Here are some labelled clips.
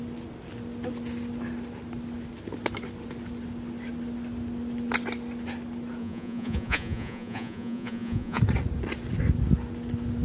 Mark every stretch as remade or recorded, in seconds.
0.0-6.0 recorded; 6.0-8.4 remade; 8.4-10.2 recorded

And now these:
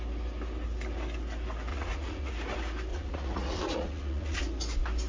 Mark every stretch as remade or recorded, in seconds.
0.0-1.7 recorded; 1.7-2.3 remade; 2.3-2.9 recorded; 2.9-4.4 remade; 4.4-5.1 recorded

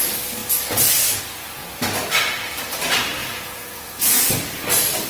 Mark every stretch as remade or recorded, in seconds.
0.0-3.2 recorded; 3.2-4.2 remade; 4.2-5.1 recorded